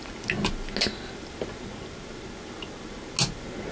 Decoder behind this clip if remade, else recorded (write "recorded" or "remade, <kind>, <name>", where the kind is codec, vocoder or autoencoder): recorded